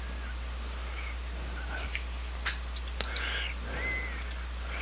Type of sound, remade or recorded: recorded